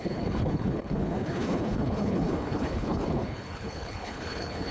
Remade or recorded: remade